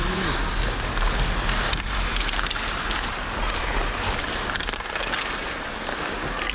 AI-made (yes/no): no